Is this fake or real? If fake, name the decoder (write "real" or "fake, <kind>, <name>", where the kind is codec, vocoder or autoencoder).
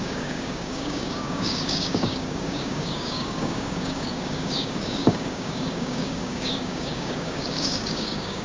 fake, codec, DAC